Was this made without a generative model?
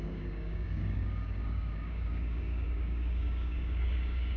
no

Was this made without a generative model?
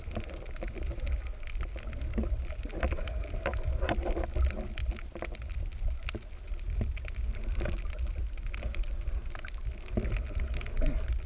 yes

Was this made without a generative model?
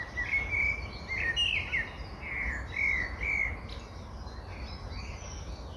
yes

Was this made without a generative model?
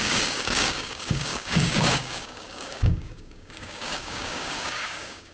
no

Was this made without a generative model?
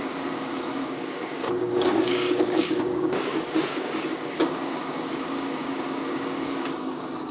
no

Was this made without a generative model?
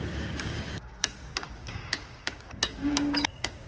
no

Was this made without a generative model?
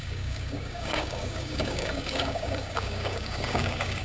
no